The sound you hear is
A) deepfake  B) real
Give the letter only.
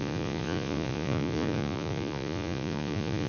A